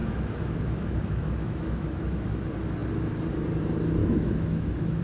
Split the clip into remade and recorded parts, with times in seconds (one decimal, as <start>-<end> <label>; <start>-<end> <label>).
0.0-2.4 remade; 2.4-4.0 recorded; 4.0-5.0 remade